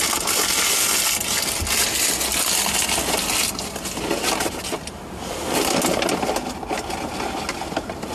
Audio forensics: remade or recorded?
recorded